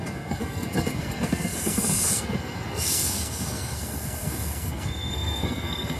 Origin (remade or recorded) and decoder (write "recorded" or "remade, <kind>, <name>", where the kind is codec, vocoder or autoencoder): remade, codec, SNAC